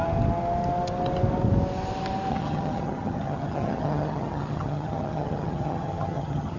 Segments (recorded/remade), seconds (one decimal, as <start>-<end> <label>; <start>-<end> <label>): 0.0-2.3 recorded; 2.3-6.6 remade